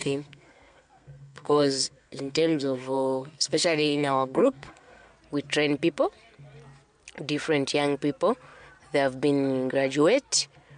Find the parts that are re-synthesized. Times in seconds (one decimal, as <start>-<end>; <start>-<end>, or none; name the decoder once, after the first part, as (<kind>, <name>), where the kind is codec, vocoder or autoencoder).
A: 0.0-5.1 (codec, SNAC)